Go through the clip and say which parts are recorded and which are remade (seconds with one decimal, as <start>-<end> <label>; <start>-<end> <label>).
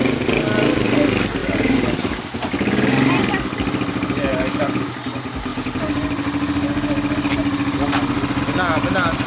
0.0-1.4 recorded; 1.4-2.2 remade; 2.2-4.3 recorded; 4.3-4.8 remade; 4.8-9.3 recorded